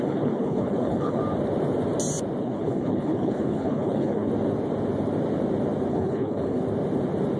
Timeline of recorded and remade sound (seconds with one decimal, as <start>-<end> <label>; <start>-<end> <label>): 0.0-1.2 remade; 1.2-2.4 recorded; 2.4-4.3 remade; 4.3-5.9 recorded; 5.9-6.6 remade; 6.6-7.4 recorded